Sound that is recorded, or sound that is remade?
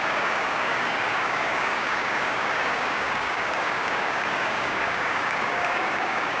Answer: remade